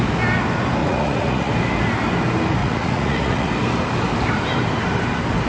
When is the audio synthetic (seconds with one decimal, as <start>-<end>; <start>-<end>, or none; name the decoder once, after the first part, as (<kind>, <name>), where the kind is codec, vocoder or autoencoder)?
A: 0.8-1.5 (vocoder, Vocos); 2.6-3.5